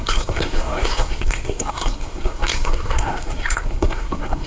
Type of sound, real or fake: fake